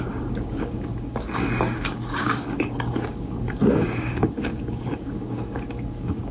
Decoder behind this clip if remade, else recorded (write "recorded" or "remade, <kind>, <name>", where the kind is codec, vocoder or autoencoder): remade, codec, DAC